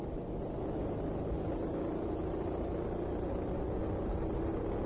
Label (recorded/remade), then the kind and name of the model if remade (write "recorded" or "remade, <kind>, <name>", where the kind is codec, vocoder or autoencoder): recorded